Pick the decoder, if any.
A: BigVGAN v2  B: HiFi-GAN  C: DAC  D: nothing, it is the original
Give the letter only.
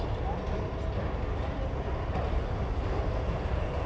D